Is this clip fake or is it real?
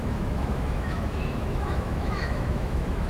fake